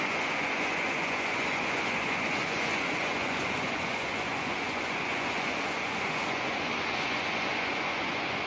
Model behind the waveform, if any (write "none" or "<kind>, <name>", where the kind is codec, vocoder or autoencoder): vocoder, Vocos